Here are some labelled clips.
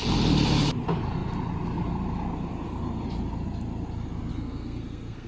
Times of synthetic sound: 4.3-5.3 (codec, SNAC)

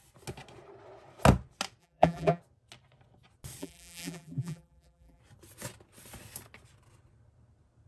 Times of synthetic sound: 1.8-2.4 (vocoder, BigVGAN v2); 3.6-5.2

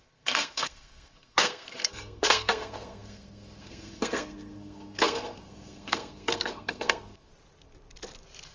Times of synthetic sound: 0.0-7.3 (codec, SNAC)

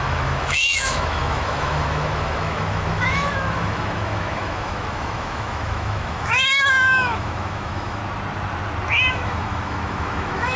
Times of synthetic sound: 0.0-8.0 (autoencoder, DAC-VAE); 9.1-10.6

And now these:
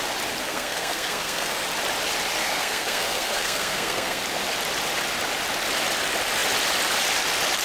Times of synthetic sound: 0.4-1.6 (codec, SNAC); 2.4-4.2